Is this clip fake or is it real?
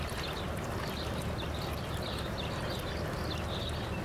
real